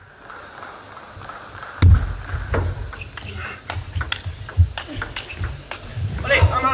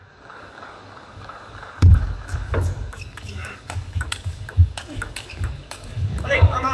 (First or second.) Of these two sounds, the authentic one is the first